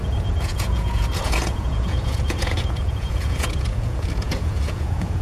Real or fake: fake